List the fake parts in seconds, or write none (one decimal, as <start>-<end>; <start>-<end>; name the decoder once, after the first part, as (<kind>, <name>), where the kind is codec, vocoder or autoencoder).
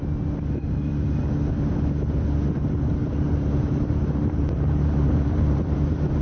0.0-0.9 (vocoder, BigVGAN v2); 2.7-6.2